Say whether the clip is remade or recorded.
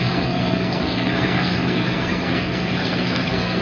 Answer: remade